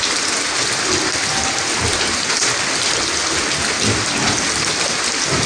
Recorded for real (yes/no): yes